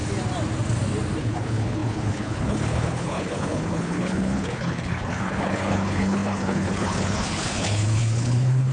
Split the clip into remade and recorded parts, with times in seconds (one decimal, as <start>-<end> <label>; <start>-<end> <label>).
0.0-1.2 recorded; 1.2-8.7 remade